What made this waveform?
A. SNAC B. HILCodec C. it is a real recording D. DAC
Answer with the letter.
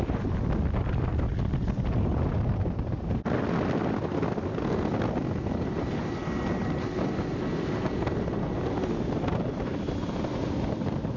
C